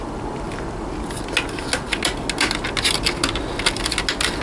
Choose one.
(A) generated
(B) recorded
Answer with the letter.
B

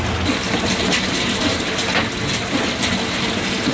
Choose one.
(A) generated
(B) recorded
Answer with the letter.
B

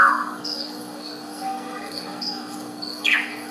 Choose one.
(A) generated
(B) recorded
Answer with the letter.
A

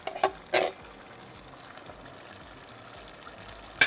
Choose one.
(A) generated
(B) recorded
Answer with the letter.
B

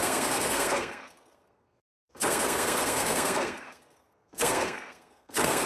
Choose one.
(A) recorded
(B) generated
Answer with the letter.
B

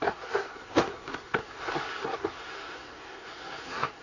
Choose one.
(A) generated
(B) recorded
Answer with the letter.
A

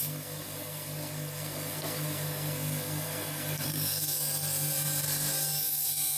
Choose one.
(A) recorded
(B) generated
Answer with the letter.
B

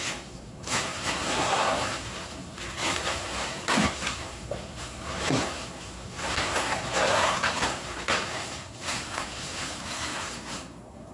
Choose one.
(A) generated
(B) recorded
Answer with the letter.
A